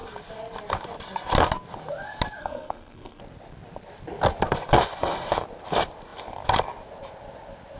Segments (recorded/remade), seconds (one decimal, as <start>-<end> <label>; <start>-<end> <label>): 0.0-2.4 recorded; 2.4-3.2 remade; 3.2-7.8 recorded